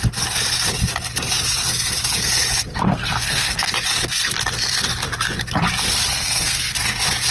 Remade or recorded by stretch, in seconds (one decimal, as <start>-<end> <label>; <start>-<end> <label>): 0.0-2.7 recorded; 2.7-3.7 remade; 3.7-6.1 recorded; 6.1-6.7 remade; 6.7-7.3 recorded